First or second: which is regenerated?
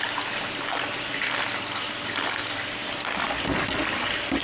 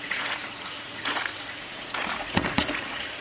second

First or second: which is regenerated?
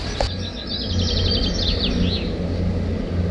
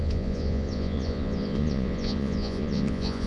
second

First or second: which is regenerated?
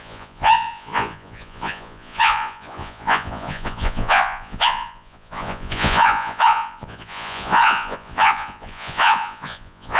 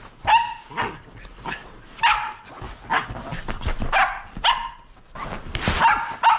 first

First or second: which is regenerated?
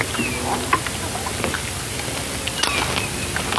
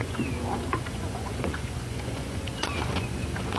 second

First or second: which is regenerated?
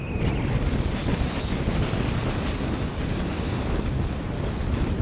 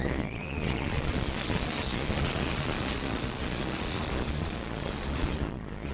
second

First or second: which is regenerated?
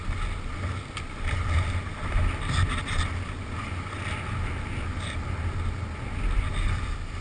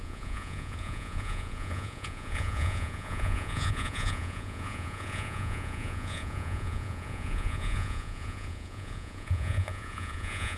second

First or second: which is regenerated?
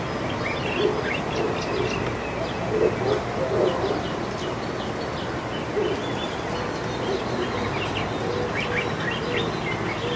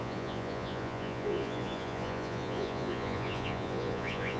second